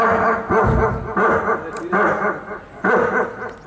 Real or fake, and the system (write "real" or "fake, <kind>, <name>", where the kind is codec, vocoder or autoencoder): real